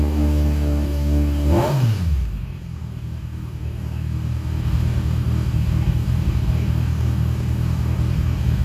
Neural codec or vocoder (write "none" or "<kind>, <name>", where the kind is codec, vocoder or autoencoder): codec, DAC